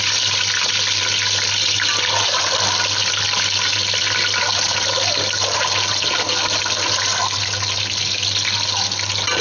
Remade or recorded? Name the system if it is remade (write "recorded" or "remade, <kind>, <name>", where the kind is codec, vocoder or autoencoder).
recorded